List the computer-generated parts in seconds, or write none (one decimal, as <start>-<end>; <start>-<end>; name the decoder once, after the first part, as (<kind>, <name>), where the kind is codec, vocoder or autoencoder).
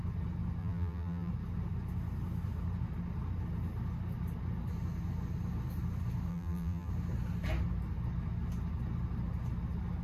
0.6-1.3 (vocoder, BigVGAN v2); 6.3-6.9